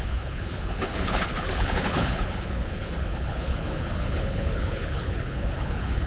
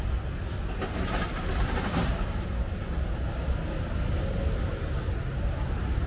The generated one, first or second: first